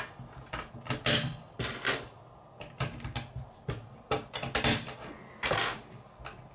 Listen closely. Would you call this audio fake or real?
real